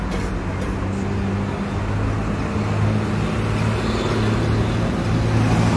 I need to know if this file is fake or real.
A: real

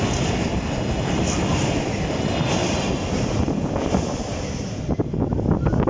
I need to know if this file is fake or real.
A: real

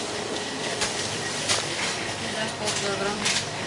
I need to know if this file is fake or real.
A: fake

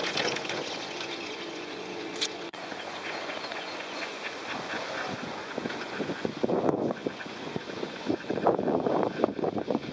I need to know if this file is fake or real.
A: fake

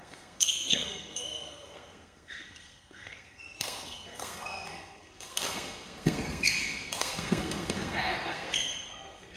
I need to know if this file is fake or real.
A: fake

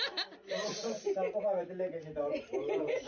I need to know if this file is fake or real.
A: real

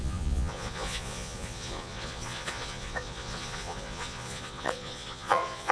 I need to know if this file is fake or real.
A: fake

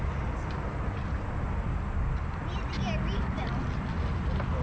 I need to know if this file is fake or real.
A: real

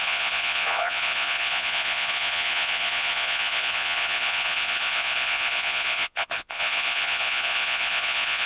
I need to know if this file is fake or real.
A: fake